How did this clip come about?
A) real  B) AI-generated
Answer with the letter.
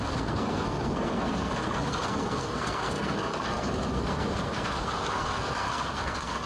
B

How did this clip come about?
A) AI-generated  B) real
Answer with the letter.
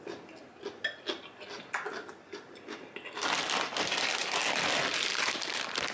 B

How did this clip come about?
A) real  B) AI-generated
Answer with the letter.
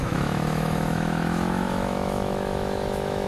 B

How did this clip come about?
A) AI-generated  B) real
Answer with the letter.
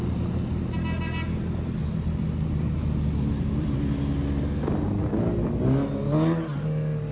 B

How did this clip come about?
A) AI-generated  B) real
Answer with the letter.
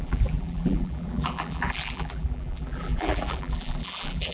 A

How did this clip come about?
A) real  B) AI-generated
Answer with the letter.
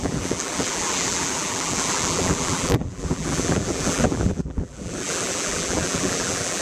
B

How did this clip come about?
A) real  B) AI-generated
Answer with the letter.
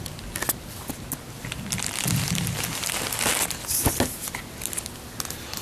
A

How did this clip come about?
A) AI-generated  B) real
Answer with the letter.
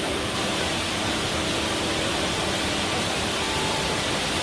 A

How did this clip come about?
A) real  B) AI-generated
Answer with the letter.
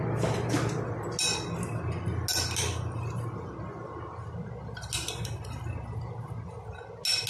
A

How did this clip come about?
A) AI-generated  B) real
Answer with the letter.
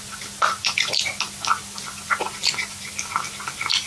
B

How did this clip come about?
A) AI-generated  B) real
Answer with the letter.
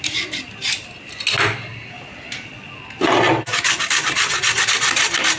B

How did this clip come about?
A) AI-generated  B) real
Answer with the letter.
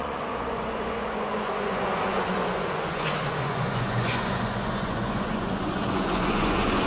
A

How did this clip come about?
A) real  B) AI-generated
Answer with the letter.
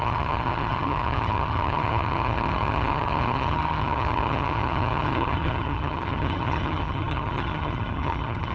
B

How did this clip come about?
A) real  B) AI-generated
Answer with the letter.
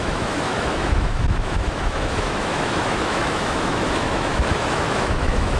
B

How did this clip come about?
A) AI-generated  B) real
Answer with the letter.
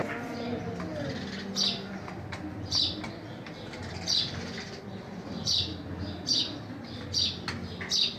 B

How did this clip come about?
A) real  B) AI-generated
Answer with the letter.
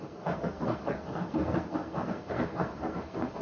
B